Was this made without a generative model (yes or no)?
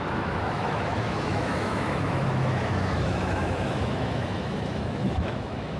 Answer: no